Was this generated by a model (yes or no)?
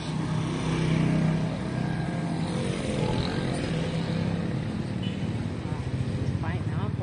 no